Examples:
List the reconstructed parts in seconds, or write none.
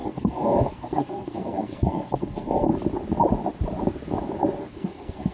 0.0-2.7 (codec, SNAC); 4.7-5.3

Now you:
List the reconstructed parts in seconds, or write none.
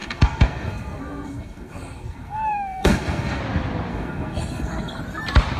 0.0-3.4 (codec, SNAC); 3.9-5.0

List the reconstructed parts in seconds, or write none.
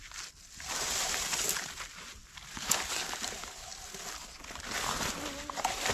none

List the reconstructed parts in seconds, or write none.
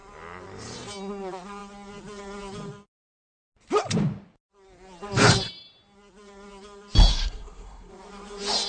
7.1-7.9 (codec, SNAC)